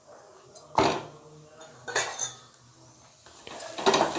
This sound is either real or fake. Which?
real